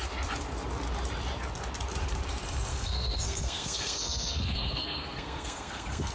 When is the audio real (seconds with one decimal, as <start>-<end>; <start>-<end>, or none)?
0.0-2.7